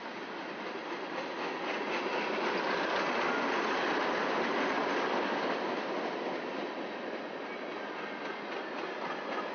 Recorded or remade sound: recorded